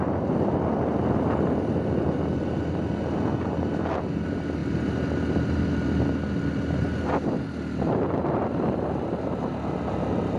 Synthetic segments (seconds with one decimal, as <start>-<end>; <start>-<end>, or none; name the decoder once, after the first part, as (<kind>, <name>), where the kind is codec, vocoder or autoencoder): none